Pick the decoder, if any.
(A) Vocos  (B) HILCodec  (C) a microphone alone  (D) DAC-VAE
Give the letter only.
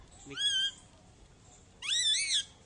C